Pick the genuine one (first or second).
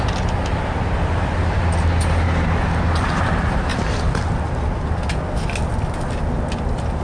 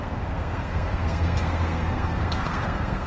first